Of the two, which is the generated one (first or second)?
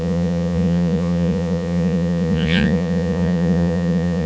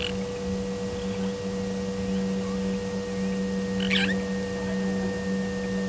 first